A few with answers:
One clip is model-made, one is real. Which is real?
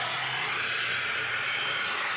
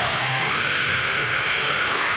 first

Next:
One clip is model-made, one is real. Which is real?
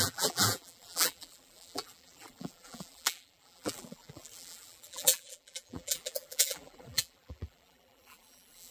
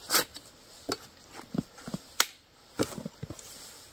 second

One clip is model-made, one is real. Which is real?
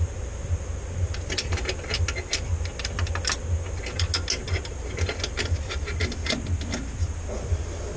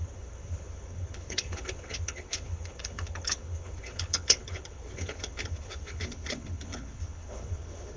first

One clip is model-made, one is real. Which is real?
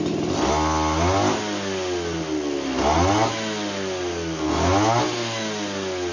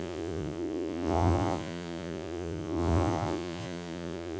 first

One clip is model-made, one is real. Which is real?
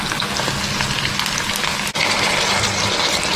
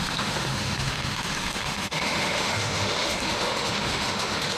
first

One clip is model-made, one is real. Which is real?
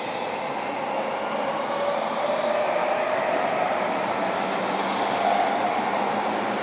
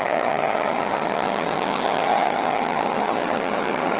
first